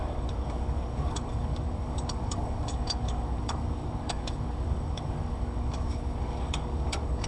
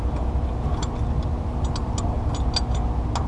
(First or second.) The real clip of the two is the second